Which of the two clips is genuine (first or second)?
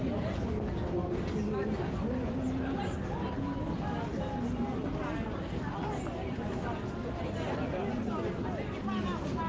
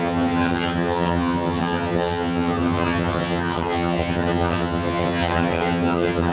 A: first